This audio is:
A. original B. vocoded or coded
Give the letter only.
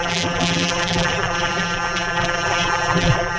B